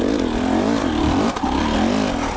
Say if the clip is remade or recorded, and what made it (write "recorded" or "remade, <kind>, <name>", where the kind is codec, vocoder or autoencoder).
recorded